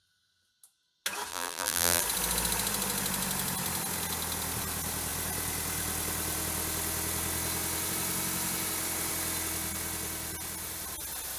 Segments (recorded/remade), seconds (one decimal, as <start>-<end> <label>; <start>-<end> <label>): 0.0-1.3 recorded; 1.3-2.0 remade; 2.0-11.4 recorded